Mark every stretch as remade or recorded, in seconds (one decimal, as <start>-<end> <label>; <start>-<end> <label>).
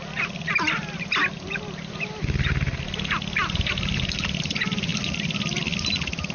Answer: 0.0-6.3 recorded